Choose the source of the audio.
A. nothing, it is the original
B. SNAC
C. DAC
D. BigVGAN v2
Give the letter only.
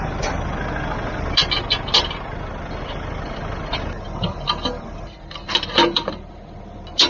A